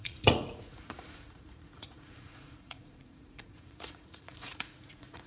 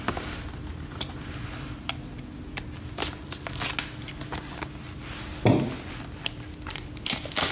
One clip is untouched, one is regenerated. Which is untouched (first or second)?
second